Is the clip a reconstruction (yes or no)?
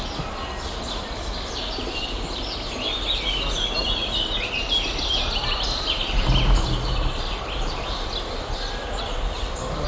no